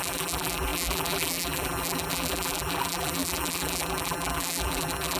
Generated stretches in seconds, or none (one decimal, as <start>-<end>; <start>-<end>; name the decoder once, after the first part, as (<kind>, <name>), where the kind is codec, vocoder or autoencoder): 0.0-5.2 (vocoder, BigVGAN v2)